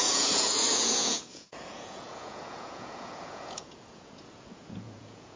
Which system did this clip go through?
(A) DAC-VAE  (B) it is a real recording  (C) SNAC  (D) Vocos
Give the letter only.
D